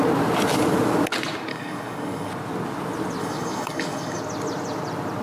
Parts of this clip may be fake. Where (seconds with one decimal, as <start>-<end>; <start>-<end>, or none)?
1.5-2.3; 3.2-4.2